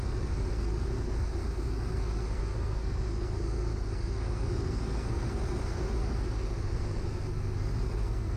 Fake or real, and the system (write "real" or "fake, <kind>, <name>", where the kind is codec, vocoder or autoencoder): fake, codec, SNAC